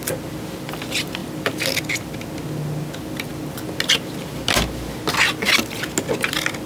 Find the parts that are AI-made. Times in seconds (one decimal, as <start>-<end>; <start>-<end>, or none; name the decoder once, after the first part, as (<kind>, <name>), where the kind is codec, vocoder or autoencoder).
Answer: none